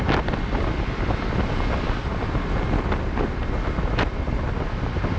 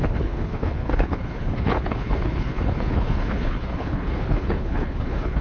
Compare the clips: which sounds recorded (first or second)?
first